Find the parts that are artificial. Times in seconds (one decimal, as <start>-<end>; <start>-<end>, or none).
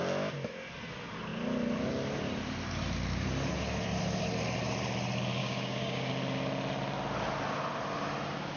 5.4-6.1